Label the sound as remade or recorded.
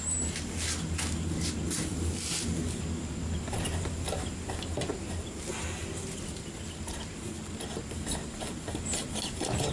recorded